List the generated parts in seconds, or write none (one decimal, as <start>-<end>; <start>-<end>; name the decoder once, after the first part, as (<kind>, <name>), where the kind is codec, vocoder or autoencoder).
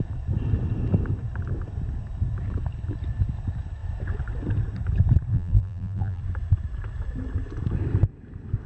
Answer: 5.3-6.2 (vocoder, BigVGAN v2)